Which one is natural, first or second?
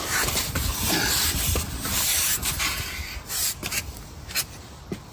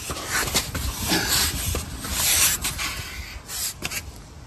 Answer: second